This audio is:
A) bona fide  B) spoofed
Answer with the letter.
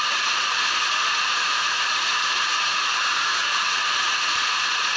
B